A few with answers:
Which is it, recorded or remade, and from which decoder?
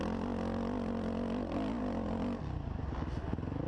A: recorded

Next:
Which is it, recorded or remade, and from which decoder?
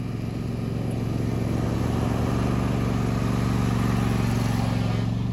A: recorded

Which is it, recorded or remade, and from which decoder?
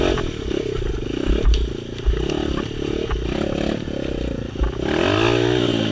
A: recorded